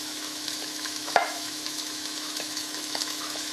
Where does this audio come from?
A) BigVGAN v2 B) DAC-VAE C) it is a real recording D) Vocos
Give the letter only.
B